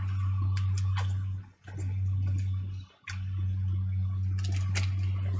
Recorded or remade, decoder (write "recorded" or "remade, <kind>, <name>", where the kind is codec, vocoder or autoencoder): recorded